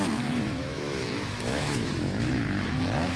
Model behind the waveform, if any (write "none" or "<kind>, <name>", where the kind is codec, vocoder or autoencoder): autoencoder, DAC-VAE